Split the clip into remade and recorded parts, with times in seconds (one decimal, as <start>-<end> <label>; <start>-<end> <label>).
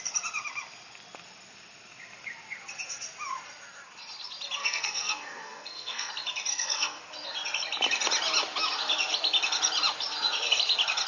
0.0-4.6 recorded; 4.6-6.1 remade; 6.1-6.5 recorded; 6.5-7.0 remade; 7.0-11.1 recorded